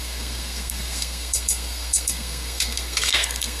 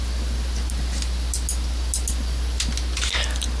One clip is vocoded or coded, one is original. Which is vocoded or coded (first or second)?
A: first